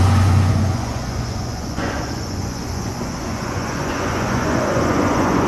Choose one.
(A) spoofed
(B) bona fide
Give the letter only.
A